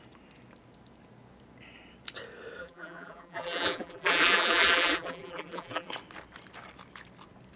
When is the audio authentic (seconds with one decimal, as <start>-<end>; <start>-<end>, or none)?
0.0-2.6; 5.9-7.6